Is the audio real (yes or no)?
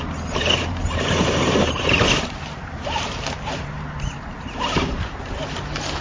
no